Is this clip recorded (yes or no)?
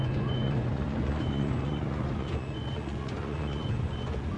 no